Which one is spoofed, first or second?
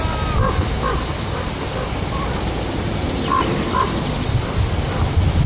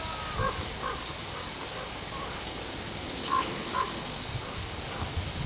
second